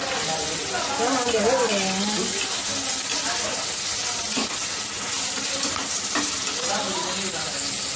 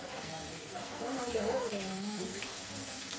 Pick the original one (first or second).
first